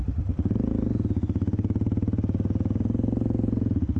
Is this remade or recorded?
recorded